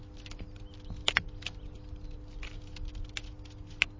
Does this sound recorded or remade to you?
recorded